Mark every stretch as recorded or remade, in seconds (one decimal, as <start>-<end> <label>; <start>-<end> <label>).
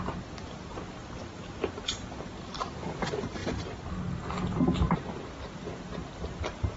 0.0-1.0 recorded; 1.0-1.7 remade; 1.7-3.4 recorded; 3.4-3.9 remade; 3.9-6.8 recorded